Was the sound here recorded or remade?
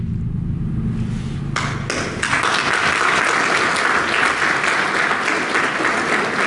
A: recorded